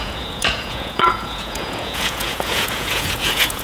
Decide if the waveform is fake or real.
fake